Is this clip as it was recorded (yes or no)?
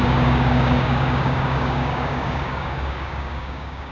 no